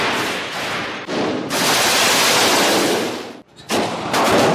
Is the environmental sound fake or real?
real